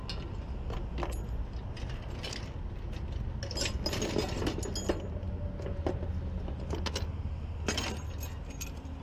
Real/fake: real